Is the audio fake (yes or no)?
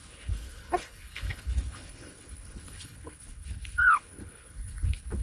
yes